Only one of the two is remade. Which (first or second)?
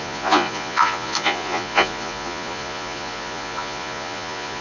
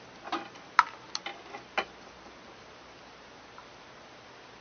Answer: first